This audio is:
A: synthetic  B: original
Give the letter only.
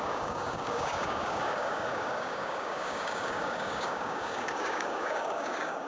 A